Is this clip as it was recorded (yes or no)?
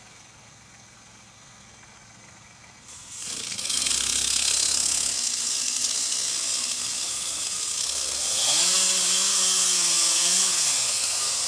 no